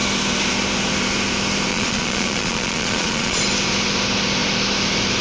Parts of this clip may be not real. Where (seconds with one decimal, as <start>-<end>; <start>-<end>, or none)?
1.7-3.4